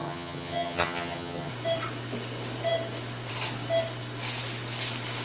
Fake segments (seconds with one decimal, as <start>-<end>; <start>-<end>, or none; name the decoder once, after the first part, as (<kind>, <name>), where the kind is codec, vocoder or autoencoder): 0.0-1.5 (vocoder, HiFi-GAN)